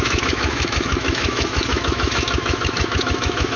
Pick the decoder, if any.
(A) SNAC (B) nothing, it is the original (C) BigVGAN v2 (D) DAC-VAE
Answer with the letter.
D